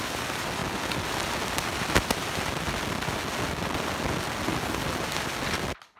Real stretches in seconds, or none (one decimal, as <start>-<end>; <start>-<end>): 0.0-6.0